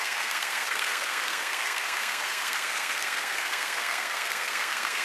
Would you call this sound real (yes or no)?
no